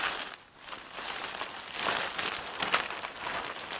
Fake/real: real